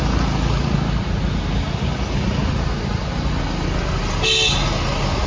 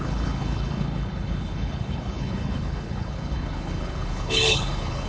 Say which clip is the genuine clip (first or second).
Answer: first